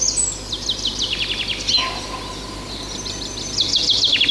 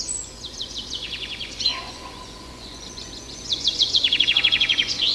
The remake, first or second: second